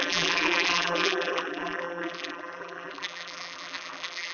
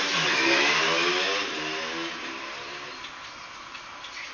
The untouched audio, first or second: second